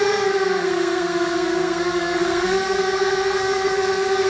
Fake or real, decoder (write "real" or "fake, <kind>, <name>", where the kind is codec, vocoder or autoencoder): fake, codec, SNAC